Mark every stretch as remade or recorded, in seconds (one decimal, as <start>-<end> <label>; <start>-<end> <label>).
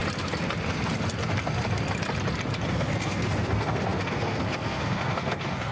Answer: 0.0-2.7 recorded; 2.7-5.7 remade